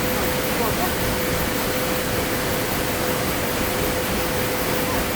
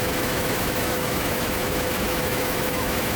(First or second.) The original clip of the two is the first